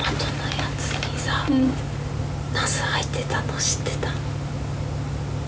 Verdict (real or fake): real